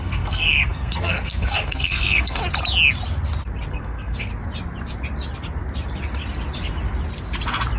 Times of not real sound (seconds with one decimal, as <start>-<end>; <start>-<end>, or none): 0.0-2.4; 3.7-4.3